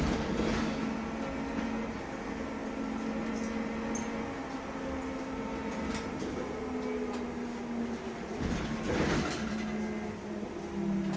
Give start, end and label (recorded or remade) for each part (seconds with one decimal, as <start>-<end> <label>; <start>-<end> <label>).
0.0-11.2 recorded